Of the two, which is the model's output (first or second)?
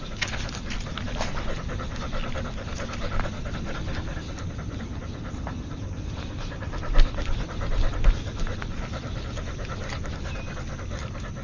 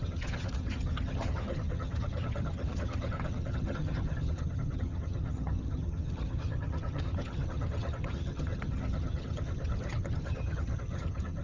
second